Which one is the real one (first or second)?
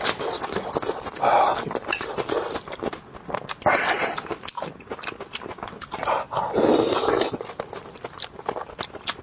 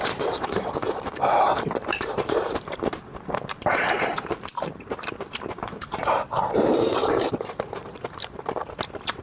first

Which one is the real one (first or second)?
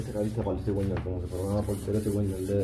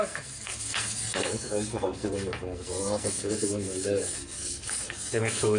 first